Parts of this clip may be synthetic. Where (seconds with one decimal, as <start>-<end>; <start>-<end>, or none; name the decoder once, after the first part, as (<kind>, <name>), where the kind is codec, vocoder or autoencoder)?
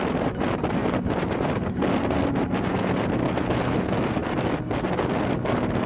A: none